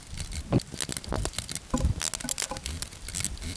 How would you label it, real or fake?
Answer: real